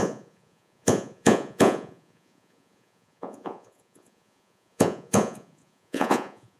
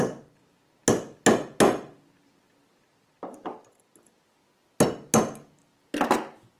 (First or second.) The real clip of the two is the second